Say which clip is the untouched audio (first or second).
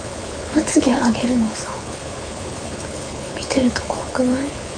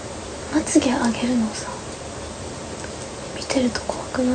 second